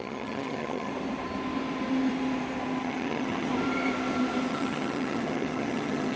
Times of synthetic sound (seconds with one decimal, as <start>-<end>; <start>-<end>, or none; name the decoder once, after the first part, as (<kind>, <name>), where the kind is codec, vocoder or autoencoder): 0.0-0.9 (vocoder, HiFi-GAN); 2.8-3.5; 4.5-6.2